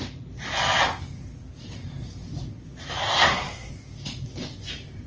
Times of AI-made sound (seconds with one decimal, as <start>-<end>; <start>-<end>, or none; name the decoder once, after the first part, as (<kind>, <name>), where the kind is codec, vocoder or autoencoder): 3.0-3.7 (codec, SNAC)